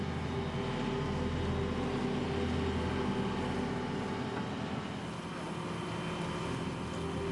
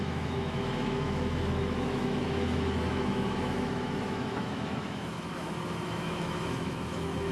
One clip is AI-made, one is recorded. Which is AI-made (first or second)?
second